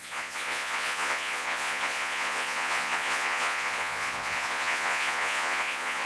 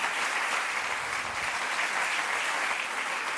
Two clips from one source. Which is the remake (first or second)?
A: first